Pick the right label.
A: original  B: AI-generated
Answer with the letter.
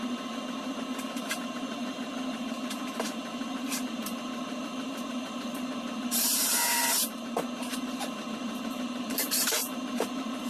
B